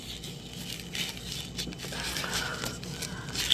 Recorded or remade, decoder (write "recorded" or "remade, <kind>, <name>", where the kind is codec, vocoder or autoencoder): recorded